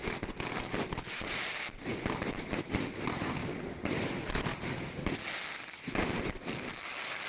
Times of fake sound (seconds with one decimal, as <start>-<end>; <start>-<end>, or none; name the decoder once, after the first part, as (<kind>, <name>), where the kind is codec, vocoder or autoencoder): none